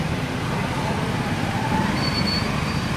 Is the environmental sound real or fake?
real